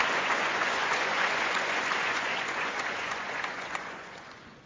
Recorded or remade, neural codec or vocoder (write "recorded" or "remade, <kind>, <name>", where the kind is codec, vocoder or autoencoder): remade, vocoder, Vocos